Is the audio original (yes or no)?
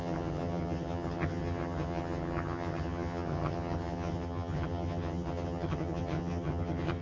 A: no